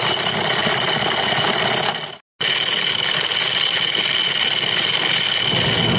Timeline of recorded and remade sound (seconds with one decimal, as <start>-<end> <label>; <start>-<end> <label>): 0.0-6.0 recorded

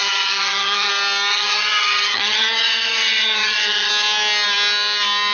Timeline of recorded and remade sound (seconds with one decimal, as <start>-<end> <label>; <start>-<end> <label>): 0.0-0.9 remade; 0.9-1.3 recorded; 1.3-3.9 remade; 3.9-5.3 recorded

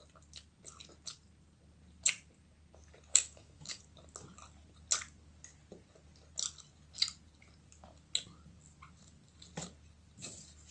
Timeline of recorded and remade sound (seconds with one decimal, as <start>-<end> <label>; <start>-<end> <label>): 0.0-3.1 recorded; 3.1-3.8 remade; 3.8-10.7 recorded

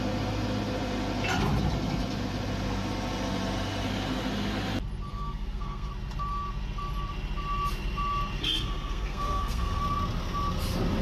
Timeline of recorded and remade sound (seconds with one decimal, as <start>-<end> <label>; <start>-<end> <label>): 0.0-5.1 recorded; 5.1-5.9 remade; 5.9-8.4 recorded; 8.4-9.8 remade; 9.8-11.0 recorded

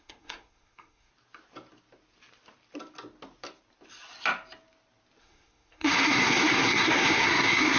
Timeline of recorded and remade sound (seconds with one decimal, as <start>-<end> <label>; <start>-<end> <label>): 0.0-1.1 remade; 1.1-5.2 recorded; 5.2-7.8 remade

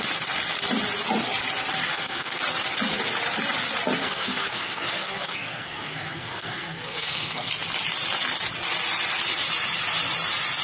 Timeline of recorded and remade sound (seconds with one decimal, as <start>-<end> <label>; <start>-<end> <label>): 0.0-1.9 recorded; 1.9-2.4 remade; 2.4-4.0 recorded; 4.0-7.5 remade; 7.5-10.6 recorded